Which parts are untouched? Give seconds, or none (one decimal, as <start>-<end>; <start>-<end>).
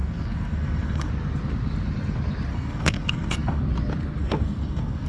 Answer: 1.1-2.5; 3.6-4.2